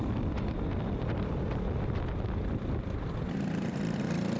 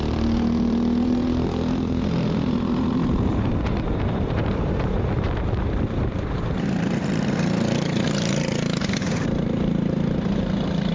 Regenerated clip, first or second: second